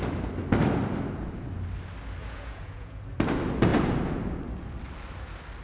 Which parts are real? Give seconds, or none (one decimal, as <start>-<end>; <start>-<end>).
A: 0.0-2.2; 3.0-5.6